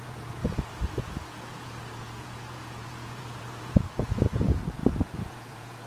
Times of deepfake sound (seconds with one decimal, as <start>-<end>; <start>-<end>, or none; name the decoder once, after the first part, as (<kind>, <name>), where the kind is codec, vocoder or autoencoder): 0.0-5.9 (vocoder, Vocos)